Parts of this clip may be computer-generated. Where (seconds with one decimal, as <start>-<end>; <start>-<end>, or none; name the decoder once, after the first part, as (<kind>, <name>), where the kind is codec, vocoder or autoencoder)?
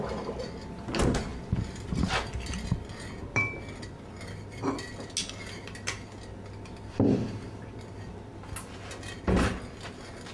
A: none